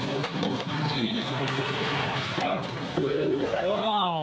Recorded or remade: remade